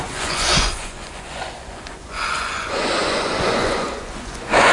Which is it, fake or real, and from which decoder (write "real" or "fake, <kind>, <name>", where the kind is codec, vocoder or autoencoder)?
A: fake, vocoder, Vocos